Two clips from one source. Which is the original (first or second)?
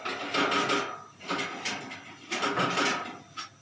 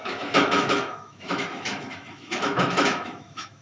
first